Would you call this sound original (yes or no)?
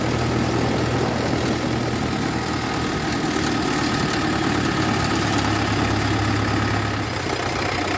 yes